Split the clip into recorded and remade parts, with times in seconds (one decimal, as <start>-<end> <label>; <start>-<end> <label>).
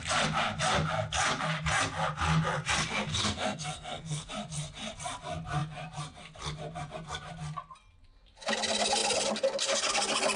0.0-3.1 recorded; 3.1-4.3 remade; 4.3-10.4 recorded